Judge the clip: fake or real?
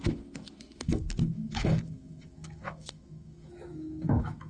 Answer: fake